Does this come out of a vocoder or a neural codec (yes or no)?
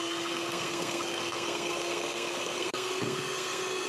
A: yes